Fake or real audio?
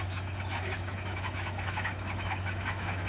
fake